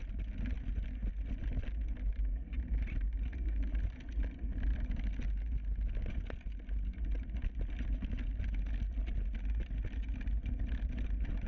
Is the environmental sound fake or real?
real